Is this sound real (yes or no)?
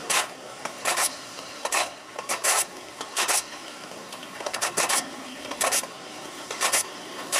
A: no